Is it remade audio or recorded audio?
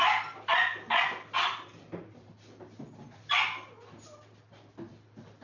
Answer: recorded